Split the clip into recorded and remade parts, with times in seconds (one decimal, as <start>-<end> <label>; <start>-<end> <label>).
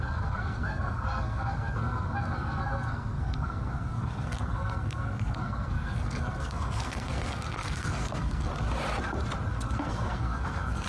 0.0-8.5 remade; 8.5-9.5 recorded; 9.5-10.9 remade